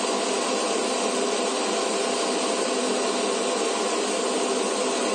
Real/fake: real